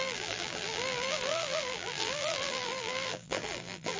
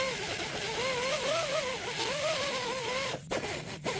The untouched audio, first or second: second